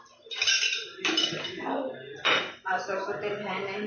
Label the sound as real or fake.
real